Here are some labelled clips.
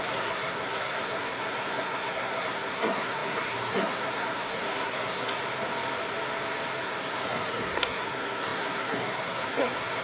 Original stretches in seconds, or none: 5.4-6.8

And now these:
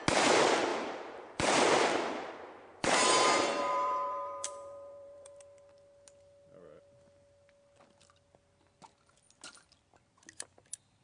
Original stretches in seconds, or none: 0.0-0.7; 2.3-2.7; 5.4-11.0

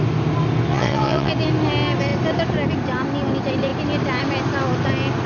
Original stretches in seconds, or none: 0.0-0.7; 1.3-5.3

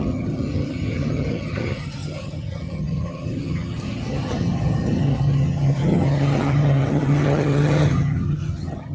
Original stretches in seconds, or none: none

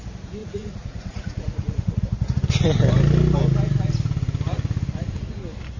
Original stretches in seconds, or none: 0.0-0.4; 2.0-5.8

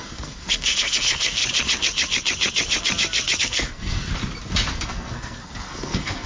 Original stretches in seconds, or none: 1.4-3.4; 4.1-4.7